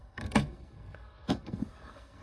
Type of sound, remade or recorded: remade